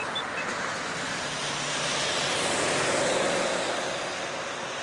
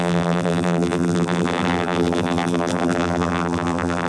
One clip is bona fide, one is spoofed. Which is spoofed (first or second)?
second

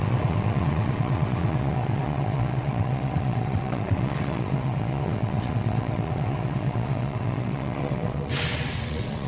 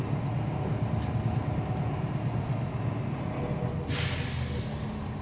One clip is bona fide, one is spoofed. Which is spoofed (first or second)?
first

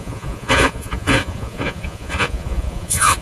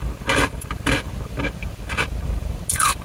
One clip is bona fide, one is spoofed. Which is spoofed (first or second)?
first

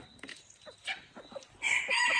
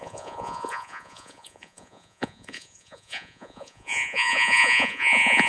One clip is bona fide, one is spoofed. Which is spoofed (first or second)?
second